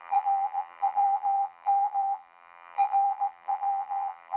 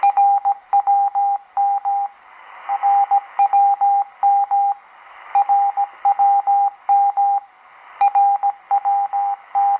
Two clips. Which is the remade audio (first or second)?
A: first